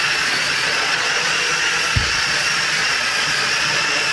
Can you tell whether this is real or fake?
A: fake